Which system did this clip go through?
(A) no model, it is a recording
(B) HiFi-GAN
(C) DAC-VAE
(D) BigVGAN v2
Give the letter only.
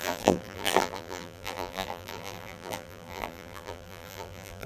D